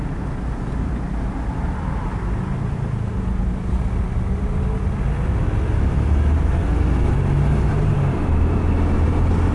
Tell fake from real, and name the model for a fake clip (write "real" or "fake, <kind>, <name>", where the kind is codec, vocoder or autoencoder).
real